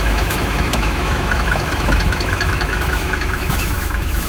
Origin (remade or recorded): remade